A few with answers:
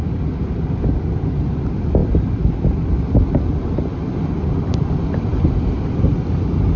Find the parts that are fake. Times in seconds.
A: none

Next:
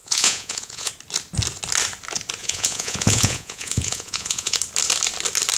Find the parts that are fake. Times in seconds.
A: 0.0-0.9; 2.4-4.6

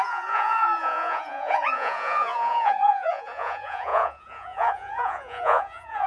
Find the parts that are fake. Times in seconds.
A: 0.0-6.1

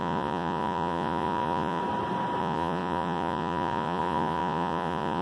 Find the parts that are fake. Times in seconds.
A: 0.0-1.8; 2.4-5.2

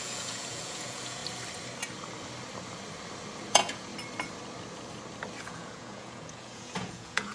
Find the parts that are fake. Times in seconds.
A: 0.0-1.2; 3.5-3.9; 5.4-7.3

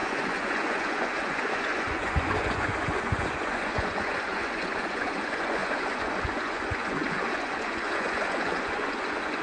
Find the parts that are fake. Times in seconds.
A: 0.0-9.4